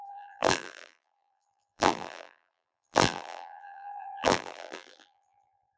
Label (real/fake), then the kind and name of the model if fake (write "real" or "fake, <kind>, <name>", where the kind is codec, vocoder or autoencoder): fake, vocoder, BigVGAN v2